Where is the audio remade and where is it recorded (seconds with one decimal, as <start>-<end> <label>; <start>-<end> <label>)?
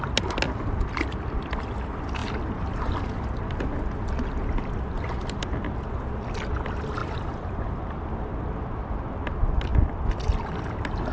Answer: 0.0-11.1 recorded